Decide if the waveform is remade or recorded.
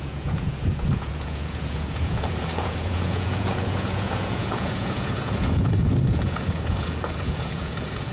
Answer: remade